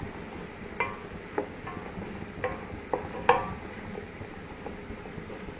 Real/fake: real